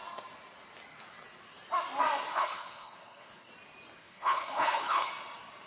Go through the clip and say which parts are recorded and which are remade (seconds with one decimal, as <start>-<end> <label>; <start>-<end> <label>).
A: 0.0-2.3 recorded; 2.3-3.5 remade; 3.5-4.0 recorded; 4.0-5.1 remade; 5.1-5.7 recorded